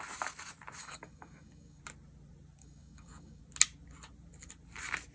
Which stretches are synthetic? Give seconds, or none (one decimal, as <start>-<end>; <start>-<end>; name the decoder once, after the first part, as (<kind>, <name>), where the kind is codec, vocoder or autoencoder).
0.8-1.8 (codec, DAC); 2.6-3.4